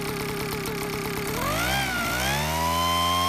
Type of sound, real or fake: real